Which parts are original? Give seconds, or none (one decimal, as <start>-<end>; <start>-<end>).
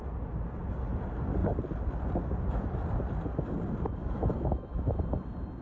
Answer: 0.0-4.3; 4.9-5.6